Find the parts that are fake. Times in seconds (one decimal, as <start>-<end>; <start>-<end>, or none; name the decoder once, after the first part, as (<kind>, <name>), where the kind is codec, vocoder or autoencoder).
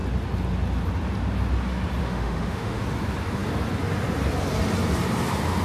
2.0-2.8 (autoencoder, DAC-VAE)